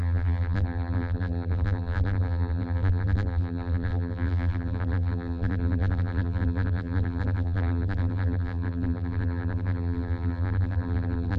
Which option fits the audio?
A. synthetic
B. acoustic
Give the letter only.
A